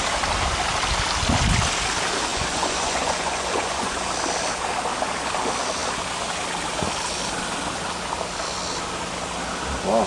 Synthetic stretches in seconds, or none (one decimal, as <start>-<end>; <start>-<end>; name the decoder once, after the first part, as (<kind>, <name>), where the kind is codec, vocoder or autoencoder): 2.3-4.1 (vocoder, Vocos)